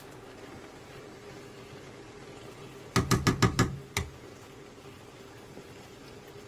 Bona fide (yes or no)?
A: yes